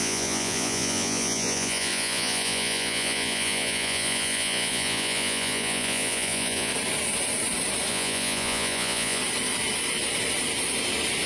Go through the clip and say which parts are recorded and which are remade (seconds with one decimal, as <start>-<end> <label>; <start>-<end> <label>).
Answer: 0.0-6.7 remade; 6.7-7.9 recorded; 7.9-9.2 remade; 9.2-11.3 recorded